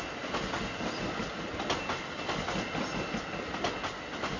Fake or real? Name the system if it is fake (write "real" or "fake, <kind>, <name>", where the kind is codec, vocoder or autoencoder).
real